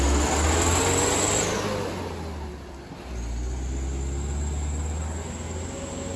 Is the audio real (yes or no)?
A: yes